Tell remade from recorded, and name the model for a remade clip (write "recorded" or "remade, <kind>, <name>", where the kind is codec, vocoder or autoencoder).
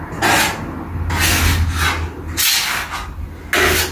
recorded